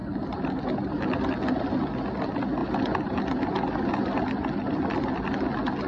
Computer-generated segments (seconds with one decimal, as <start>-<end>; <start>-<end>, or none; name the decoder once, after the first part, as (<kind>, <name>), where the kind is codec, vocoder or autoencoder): 0.0-0.6 (vocoder, BigVGAN v2)